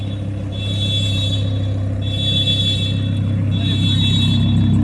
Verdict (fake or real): real